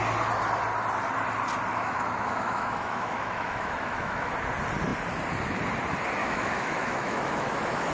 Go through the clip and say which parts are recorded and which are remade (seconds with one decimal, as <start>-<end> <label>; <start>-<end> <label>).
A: 0.0-1.7 recorded; 1.7-4.3 remade; 4.3-6.2 recorded; 6.2-7.9 remade